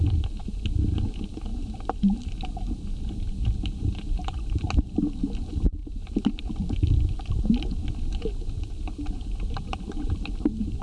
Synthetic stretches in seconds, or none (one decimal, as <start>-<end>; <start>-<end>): 1.5-3.0; 5.8-7.9